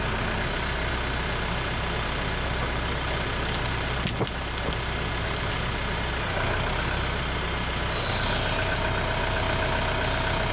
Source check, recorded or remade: recorded